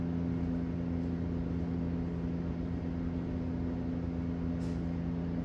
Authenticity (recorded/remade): recorded